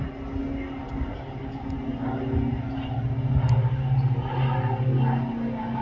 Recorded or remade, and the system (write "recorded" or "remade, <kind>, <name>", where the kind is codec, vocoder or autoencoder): recorded